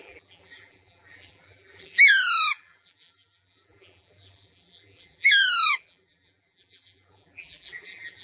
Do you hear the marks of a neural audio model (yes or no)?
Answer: yes